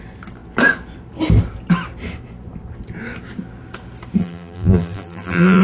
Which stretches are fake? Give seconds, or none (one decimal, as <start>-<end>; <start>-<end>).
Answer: 4.2-5.6